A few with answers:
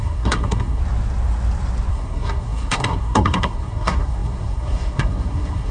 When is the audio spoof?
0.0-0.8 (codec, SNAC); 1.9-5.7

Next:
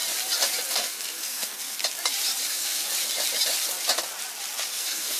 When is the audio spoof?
0.7-1.8 (codec, SNAC); 2.5-2.9; 4.7-5.2

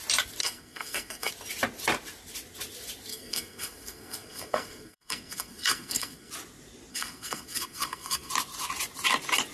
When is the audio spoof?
0.4-1.3 (codec, SNAC); 3.1-6.3; 6.9-8.3

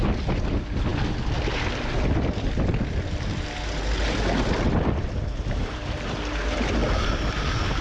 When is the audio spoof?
none